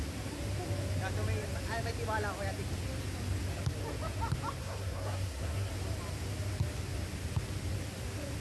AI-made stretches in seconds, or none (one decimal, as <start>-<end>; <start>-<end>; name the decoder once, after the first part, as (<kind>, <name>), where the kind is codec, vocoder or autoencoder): 4.6-5.7 (codec, SNAC)